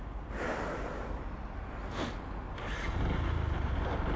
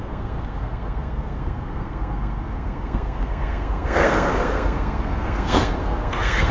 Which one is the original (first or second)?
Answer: first